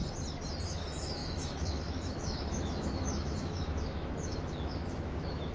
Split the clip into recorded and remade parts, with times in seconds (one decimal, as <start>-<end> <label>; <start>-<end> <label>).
0.0-0.7 recorded; 0.7-5.5 remade